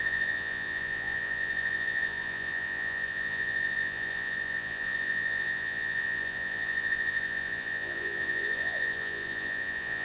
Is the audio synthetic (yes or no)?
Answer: yes